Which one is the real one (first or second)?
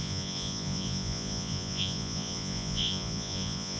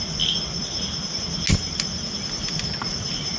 second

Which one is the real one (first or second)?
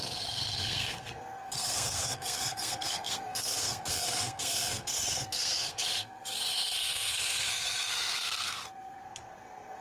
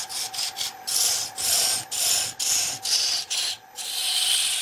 second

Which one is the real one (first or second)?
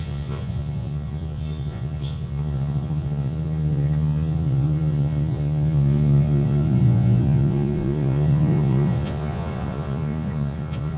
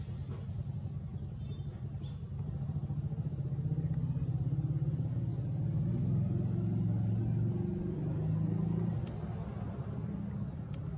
second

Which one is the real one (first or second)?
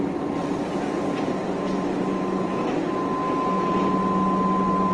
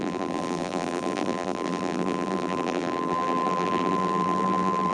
first